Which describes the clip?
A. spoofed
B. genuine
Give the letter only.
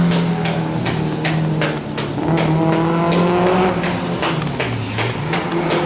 B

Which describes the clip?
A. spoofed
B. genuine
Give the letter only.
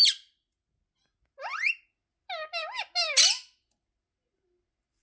B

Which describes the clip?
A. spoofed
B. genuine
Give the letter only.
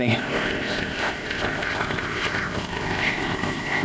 A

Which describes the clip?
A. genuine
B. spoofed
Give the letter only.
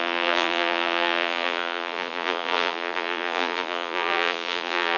B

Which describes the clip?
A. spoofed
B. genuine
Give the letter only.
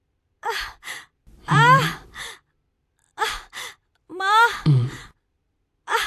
A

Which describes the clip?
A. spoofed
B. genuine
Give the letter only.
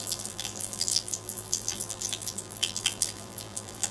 A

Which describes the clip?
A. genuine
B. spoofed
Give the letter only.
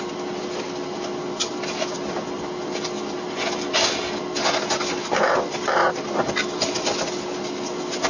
A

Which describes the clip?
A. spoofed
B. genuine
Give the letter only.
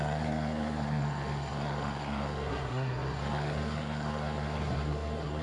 A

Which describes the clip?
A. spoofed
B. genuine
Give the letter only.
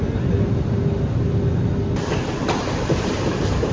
B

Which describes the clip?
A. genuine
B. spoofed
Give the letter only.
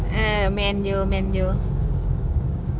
B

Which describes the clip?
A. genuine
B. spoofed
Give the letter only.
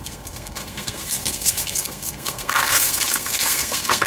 B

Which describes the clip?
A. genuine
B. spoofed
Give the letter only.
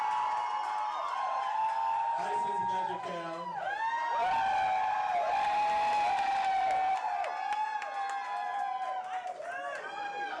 A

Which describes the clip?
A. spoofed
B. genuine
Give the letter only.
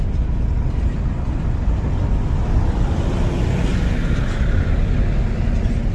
B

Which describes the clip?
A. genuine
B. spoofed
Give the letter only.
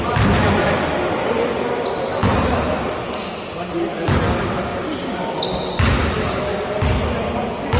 A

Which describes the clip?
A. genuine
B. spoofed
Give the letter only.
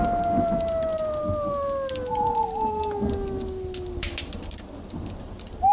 A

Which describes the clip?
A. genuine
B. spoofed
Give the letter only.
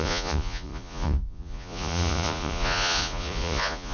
B